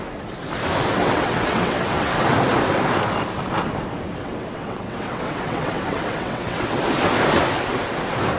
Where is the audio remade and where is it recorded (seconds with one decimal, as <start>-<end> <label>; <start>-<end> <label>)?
0.0-1.0 recorded; 1.0-2.2 remade; 2.2-4.2 recorded; 4.2-6.8 remade; 6.8-8.4 recorded